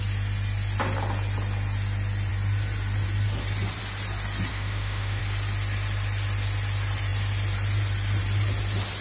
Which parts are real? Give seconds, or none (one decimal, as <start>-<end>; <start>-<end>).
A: 0.0-4.5; 5.2-9.0